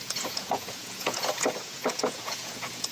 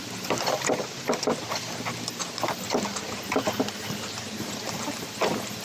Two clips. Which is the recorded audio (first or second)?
second